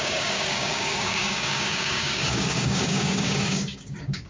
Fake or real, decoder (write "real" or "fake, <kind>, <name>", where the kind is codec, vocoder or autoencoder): fake, codec, DAC